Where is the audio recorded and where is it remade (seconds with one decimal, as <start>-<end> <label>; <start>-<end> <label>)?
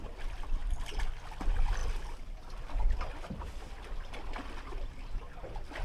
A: 0.0-5.8 recorded